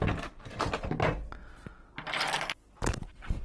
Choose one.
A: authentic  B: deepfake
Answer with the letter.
A